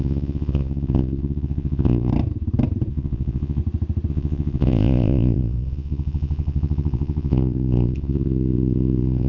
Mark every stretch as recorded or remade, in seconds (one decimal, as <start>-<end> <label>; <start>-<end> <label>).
0.0-2.1 remade; 2.1-2.9 recorded; 2.9-3.6 remade; 3.6-4.1 recorded; 4.1-9.3 remade